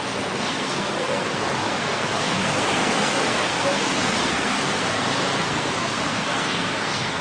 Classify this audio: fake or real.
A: fake